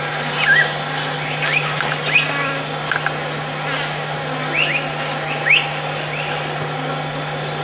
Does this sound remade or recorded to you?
recorded